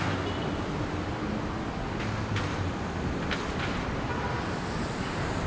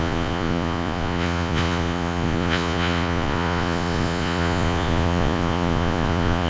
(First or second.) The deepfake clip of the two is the second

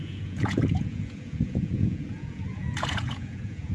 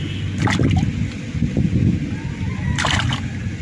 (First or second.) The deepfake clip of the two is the first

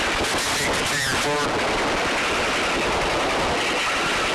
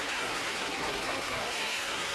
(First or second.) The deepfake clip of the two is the second